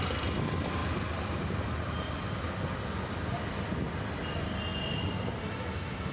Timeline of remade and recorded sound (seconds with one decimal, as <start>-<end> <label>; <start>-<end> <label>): 0.0-6.1 recorded